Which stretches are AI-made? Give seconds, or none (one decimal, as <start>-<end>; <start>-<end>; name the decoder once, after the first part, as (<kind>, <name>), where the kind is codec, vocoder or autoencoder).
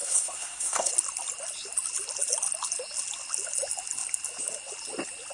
0.0-0.9 (codec, SNAC)